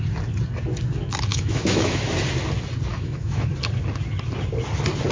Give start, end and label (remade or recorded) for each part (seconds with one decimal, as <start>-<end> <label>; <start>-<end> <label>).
0.0-1.3 recorded; 1.3-2.1 remade; 2.1-2.9 recorded; 2.9-3.5 remade; 3.5-5.1 recorded